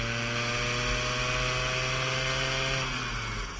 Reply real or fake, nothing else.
real